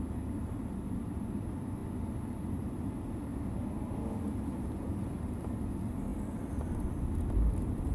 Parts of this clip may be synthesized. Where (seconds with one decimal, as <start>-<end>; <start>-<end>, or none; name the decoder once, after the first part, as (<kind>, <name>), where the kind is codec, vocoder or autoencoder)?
0.0-1.8 (vocoder, BigVGAN v2); 2.4-3.3; 4.1-7.9